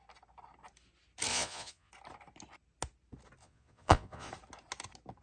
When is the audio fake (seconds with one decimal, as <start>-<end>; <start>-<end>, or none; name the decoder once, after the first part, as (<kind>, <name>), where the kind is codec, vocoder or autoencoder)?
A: 1.3-1.9 (vocoder, Vocos); 3.4-4.3